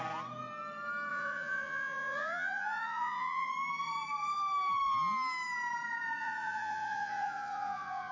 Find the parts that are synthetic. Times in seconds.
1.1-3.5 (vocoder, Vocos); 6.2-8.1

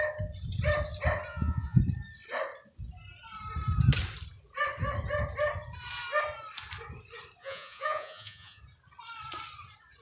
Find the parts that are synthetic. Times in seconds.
1.3-1.8 (vocoder, Vocos); 7.4-8.6

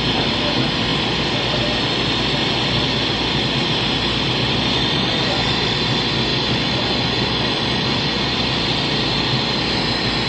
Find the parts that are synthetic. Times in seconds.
4.4-5.7 (vocoder, Vocos); 6.3-8.5

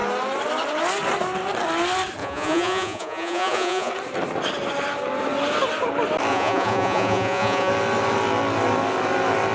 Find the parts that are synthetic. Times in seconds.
2.2-3.9 (vocoder, Vocos); 6.3-7.7

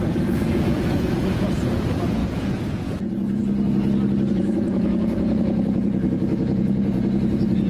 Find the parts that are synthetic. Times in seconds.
0.0-3.4 (vocoder, Vocos); 4.3-7.7

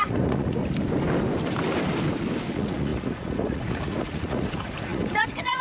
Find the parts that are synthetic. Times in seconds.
0.0-0.6 (vocoder, Vocos); 2.5-5.6

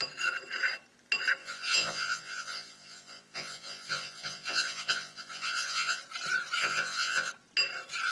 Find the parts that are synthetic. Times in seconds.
1.4-6.0 (vocoder, Vocos); 6.6-7.3

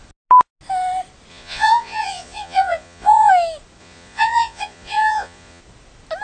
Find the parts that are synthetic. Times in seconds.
1.3-3.3 (vocoder, Vocos); 3.8-5.6